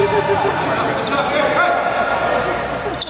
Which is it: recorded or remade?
recorded